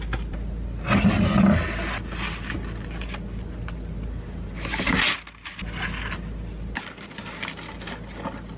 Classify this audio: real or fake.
real